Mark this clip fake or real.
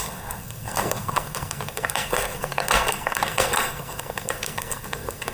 fake